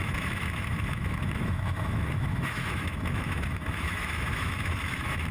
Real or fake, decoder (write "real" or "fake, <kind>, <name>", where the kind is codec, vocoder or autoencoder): fake, autoencoder, DAC-VAE